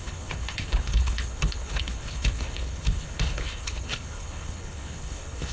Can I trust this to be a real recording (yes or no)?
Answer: no